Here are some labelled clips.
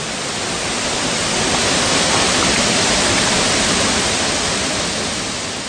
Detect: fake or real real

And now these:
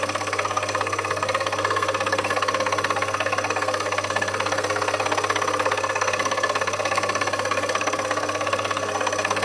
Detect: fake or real fake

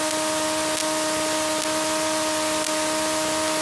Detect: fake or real real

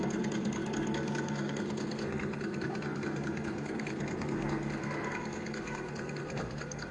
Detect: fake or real fake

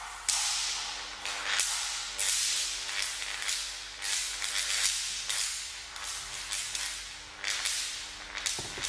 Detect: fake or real real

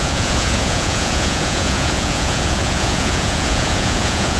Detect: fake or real fake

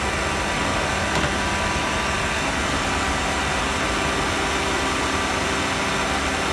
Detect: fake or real real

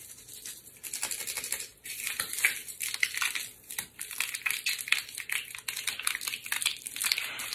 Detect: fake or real real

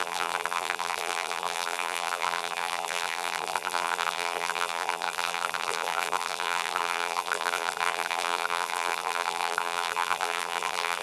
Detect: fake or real fake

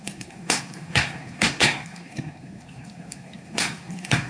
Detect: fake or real fake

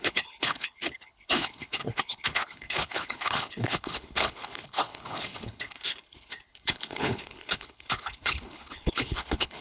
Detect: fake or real fake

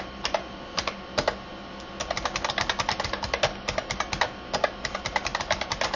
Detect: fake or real real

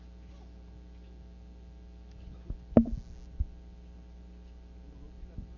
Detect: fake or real real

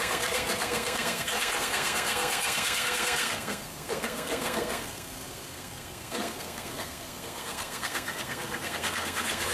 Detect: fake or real fake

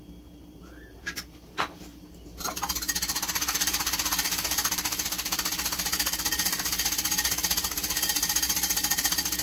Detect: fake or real fake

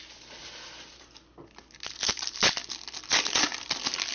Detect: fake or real real